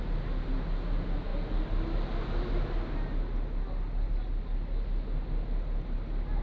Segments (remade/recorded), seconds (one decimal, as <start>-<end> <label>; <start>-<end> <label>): 0.0-6.4 recorded